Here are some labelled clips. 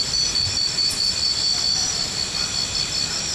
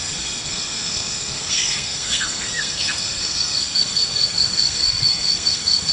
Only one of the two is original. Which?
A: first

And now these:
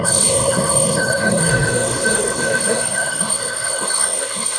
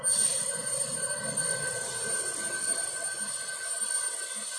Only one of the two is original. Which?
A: second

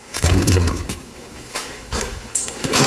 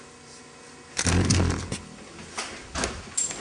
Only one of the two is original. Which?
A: second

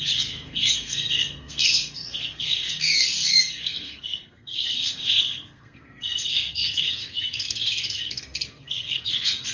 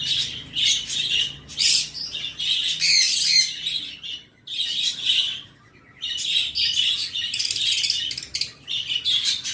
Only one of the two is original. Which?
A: second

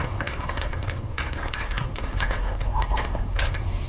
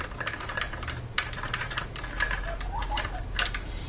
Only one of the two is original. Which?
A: second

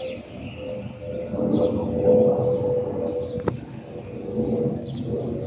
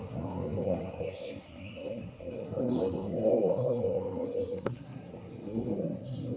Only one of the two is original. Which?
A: first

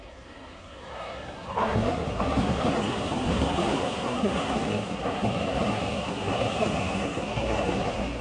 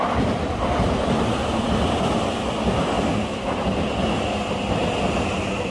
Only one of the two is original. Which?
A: second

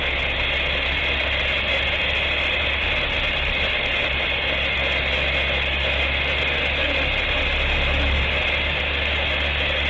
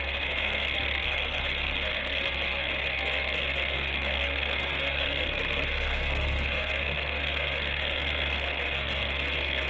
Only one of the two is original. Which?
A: first